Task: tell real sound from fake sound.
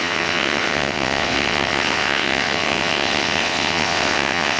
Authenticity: fake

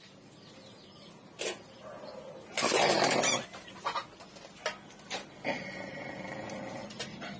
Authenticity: real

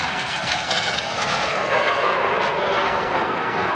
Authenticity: fake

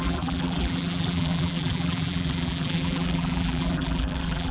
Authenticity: fake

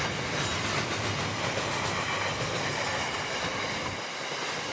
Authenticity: real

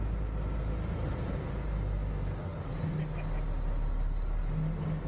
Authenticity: real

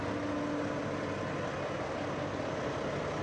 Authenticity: real